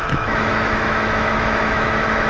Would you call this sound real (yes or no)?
no